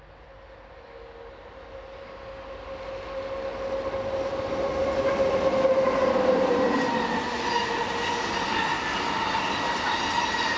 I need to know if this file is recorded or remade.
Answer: recorded